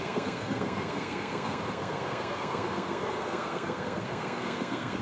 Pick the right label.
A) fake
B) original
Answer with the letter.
A